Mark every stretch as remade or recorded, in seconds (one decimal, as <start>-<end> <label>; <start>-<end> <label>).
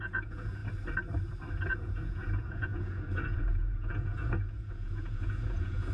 0.0-0.6 remade; 0.6-1.7 recorded; 1.7-5.9 remade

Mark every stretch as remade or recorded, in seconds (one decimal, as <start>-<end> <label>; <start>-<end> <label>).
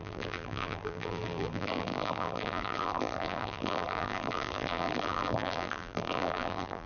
0.0-6.9 remade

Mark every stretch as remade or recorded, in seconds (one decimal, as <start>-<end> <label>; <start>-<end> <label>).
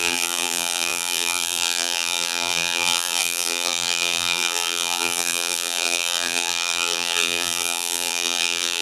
0.0-8.8 remade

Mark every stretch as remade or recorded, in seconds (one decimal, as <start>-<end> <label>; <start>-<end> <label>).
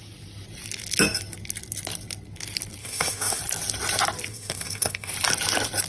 0.0-2.8 recorded; 2.8-3.4 remade; 3.4-4.3 recorded; 4.3-5.1 remade; 5.1-5.9 recorded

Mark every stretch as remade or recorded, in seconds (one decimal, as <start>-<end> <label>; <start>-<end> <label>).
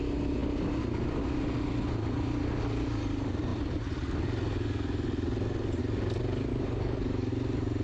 0.0-6.5 recorded; 6.5-7.3 remade; 7.3-7.8 recorded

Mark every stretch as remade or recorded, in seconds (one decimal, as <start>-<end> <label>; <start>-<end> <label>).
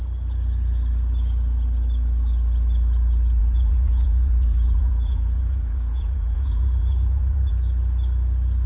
0.0-3.4 recorded; 3.4-7.5 remade; 7.5-8.7 recorded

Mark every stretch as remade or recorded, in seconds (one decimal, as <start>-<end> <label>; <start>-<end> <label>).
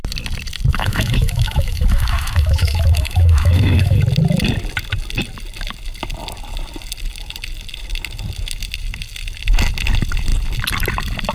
0.0-0.7 recorded; 0.7-4.0 remade; 4.0-11.3 recorded